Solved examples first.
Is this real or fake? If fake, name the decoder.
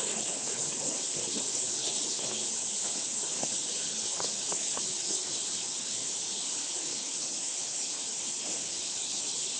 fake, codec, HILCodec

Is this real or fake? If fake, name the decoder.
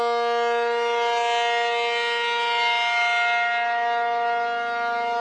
real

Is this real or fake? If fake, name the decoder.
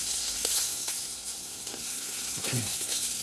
fake, codec, SNAC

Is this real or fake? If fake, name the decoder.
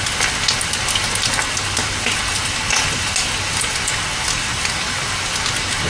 real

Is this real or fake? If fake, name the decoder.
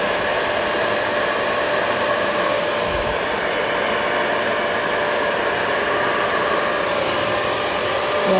real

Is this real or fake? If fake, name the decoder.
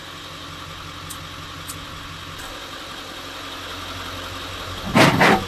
real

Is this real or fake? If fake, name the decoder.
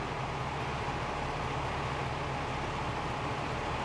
real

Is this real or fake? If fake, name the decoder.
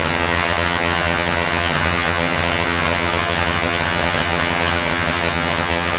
fake, vocoder, HiFi-GAN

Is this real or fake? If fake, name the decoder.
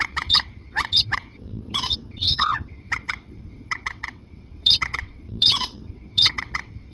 fake, vocoder, WaveNeXt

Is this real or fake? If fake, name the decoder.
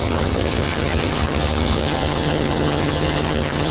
fake, vocoder, HiFi-GAN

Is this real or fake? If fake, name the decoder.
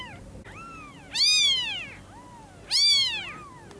real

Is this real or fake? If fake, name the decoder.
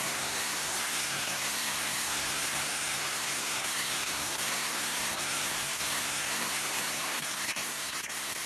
fake, codec, SNAC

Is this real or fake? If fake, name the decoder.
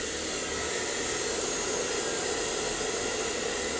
real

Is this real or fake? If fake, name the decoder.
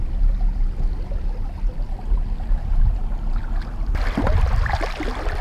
real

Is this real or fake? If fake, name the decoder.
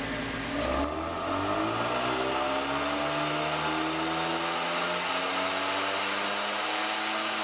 real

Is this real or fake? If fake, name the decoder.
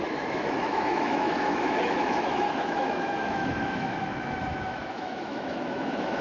fake, autoencoder, DAC-VAE